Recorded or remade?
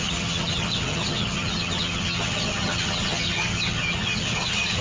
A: remade